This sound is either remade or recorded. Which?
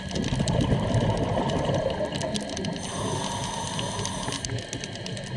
recorded